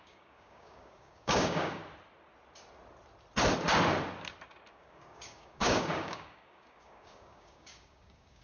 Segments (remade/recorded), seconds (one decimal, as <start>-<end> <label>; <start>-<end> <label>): 0.0-1.8 remade; 1.8-4.7 recorded; 4.7-8.4 remade